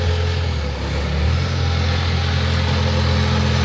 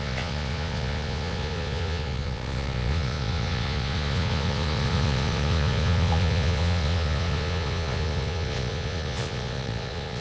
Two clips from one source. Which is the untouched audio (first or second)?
first